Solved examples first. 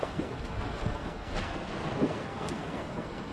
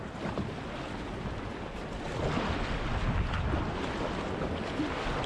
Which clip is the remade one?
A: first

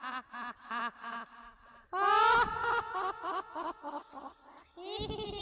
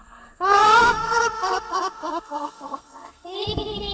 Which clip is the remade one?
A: second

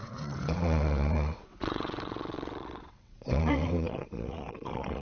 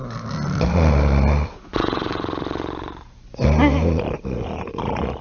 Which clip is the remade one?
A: first